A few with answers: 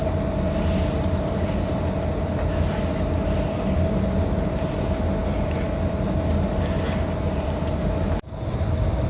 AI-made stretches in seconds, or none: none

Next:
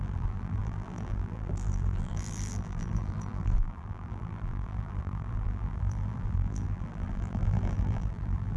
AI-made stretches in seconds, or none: 0.0-8.6 (vocoder, BigVGAN v2)

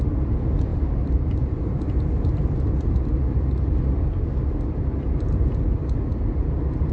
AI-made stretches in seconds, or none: 0.7-3.4 (vocoder, BigVGAN v2)

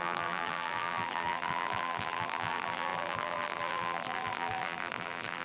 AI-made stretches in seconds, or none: 0.0-5.4 (vocoder, BigVGAN v2)

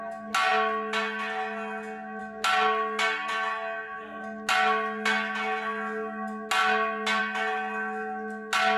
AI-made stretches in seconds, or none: none

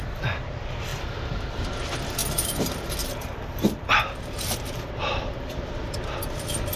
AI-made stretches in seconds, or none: 0.0-6.8 (vocoder, BigVGAN v2)

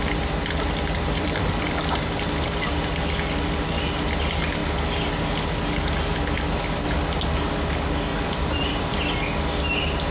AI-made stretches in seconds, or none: 1.1-1.8 (vocoder, BigVGAN v2); 8.1-9.0

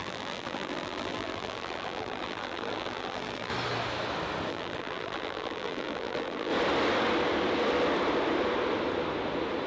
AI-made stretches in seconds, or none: 0.0-3.5 (vocoder, BigVGAN v2); 4.5-6.5